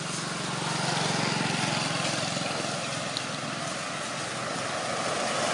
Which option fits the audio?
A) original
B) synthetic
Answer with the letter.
A